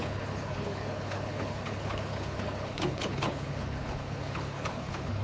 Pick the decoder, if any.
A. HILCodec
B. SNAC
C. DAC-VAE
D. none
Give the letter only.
A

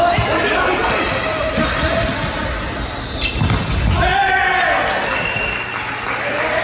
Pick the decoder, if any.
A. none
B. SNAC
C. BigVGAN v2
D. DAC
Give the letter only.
A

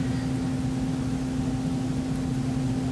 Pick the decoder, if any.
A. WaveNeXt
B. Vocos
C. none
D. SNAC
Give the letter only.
C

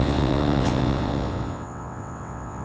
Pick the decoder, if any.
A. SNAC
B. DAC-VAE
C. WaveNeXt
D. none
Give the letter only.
C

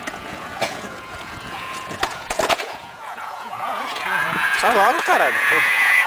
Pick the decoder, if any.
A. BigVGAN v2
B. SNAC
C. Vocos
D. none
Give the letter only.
C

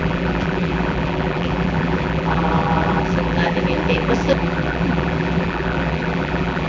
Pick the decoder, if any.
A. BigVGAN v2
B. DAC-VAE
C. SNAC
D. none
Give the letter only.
A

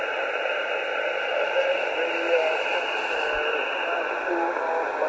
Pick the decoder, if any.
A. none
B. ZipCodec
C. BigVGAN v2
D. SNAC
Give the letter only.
A